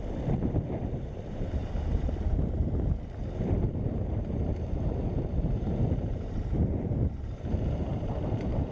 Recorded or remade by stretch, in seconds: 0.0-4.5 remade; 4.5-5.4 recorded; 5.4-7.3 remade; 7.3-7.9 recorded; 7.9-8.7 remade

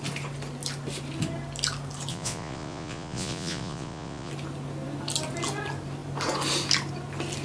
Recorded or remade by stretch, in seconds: 0.0-2.1 recorded; 2.1-4.3 remade; 4.3-7.4 recorded

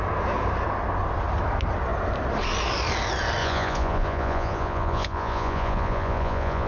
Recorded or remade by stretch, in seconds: 0.0-3.4 recorded; 3.4-6.7 remade